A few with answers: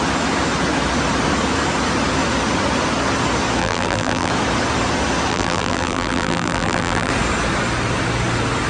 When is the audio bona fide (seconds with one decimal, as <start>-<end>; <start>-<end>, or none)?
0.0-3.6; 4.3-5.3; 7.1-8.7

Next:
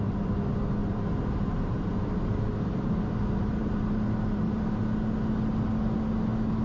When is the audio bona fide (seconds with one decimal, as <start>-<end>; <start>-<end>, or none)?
0.0-0.8; 4.8-6.6

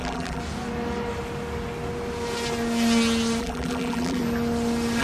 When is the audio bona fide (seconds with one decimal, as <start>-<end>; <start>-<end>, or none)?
0.4-3.4; 4.2-5.0